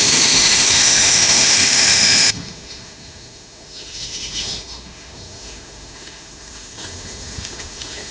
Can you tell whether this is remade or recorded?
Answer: remade